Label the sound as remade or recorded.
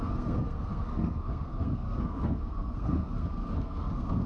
remade